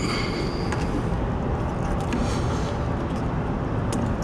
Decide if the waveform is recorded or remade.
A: recorded